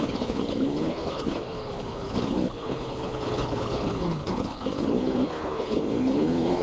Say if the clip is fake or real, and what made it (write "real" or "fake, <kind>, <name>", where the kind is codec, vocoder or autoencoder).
fake, codec, HILCodec